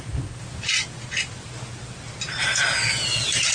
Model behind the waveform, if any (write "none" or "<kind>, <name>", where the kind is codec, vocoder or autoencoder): none